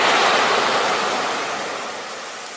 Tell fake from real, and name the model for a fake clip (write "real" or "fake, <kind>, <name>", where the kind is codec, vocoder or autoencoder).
real